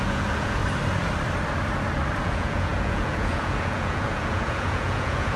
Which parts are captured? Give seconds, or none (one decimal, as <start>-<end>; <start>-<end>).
0.6-2.2